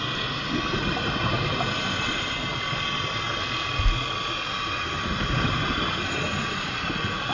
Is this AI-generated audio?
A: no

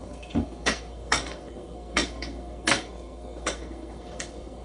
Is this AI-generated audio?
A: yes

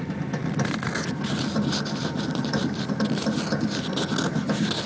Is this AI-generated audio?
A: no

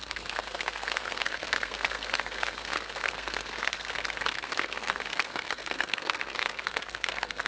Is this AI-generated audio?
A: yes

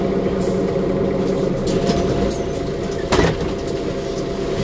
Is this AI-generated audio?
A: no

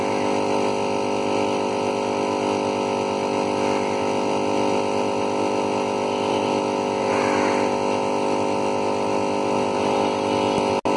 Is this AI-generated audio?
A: no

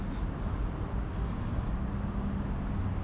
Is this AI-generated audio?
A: no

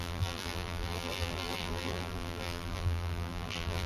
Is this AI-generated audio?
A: yes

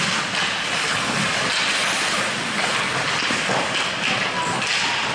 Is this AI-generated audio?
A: no